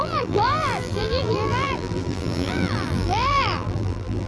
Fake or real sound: fake